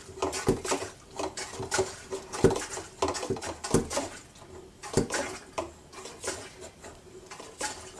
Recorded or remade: recorded